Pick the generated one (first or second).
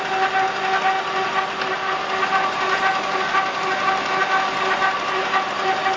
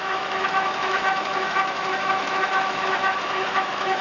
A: second